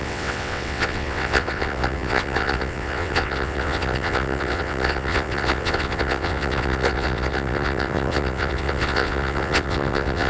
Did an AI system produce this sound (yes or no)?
yes